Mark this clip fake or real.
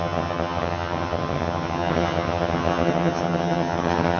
fake